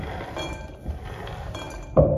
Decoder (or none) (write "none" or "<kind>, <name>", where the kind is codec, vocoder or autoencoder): none